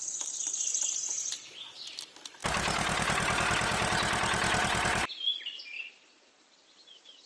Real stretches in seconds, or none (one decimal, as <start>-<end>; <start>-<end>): 2.4-6.5